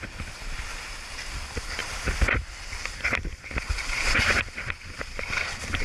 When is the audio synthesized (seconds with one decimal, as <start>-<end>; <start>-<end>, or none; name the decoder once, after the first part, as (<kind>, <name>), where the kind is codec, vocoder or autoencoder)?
1.8-5.3 (vocoder, BigVGAN v2)